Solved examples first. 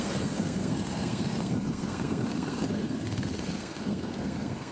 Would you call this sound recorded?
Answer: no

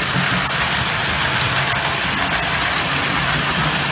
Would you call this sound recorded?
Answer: yes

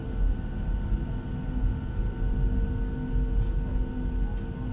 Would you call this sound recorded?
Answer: yes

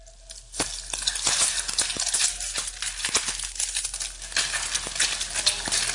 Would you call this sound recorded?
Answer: yes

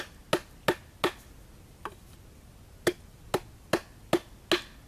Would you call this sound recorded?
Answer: yes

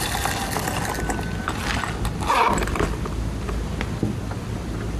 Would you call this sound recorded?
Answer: yes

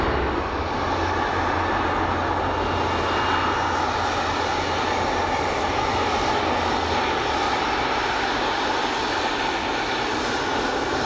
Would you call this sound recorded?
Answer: yes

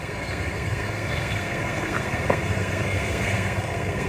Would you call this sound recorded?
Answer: no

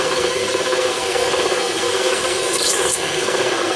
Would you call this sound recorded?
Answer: no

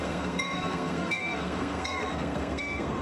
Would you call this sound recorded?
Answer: no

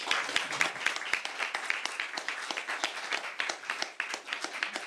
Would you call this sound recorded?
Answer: yes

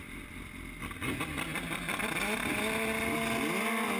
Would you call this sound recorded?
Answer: yes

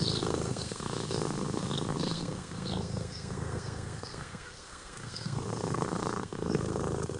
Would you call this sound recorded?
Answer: no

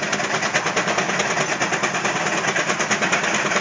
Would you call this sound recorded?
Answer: yes